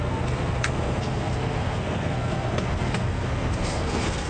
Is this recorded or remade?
remade